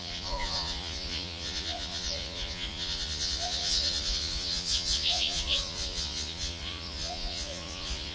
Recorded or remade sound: remade